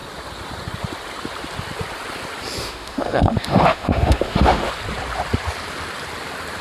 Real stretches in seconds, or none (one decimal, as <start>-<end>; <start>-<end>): 0.0-2.6; 4.7-6.6